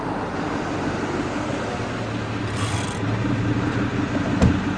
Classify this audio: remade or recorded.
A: recorded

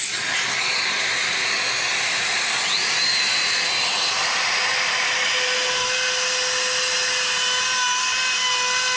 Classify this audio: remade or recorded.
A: recorded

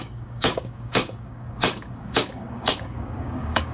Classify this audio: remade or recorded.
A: remade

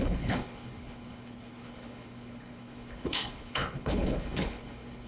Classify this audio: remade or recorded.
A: remade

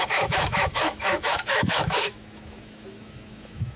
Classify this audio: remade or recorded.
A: remade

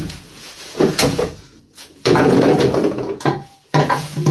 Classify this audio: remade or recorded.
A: remade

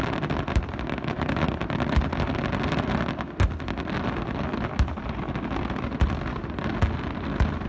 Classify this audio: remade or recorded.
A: recorded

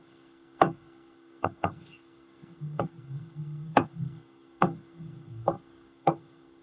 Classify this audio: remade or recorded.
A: remade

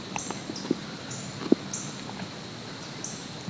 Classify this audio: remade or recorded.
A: recorded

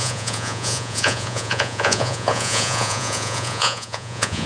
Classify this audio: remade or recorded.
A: remade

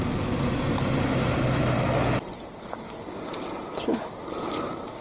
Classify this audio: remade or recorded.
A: recorded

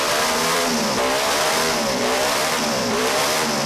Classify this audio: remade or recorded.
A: remade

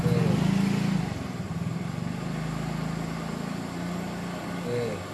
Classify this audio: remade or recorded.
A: recorded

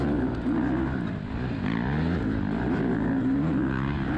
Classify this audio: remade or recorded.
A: recorded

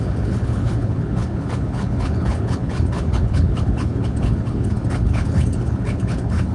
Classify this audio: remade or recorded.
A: remade